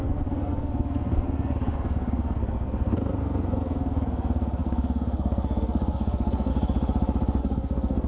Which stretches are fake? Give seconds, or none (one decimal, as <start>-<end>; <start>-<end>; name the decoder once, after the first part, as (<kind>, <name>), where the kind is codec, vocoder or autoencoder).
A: 0.0-6.5 (codec, SNAC); 7.4-8.1